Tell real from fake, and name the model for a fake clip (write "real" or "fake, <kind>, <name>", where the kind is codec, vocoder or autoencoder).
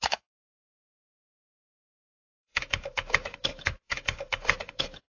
fake, autoencoder, DAC-VAE